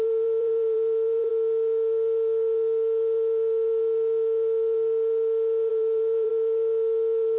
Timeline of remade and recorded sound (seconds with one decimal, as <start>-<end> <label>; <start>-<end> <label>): 0.0-1.3 remade; 1.3-5.7 recorded; 5.7-6.3 remade; 6.3-7.4 recorded